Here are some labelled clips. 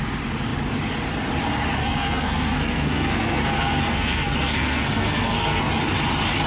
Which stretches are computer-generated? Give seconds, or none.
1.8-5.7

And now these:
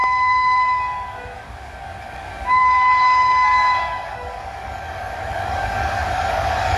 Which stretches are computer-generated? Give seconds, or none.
0.0-6.8

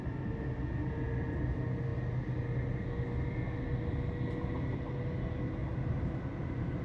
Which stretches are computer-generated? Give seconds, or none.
5.6-6.8

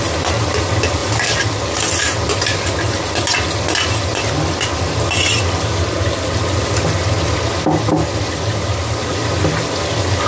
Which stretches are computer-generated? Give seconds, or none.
none